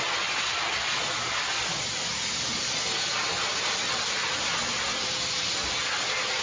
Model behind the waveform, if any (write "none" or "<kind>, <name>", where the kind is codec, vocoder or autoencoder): none